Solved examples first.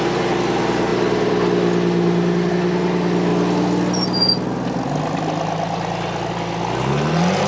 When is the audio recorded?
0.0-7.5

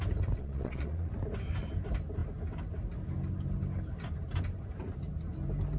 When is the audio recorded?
0.0-0.4; 1.1-5.8